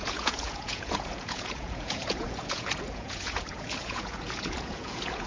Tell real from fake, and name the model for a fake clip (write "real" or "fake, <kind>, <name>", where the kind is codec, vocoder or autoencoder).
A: fake, vocoder, Vocos